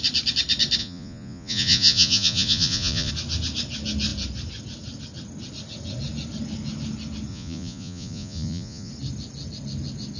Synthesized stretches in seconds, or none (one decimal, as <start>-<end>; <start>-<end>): 0.8-3.1; 7.3-8.9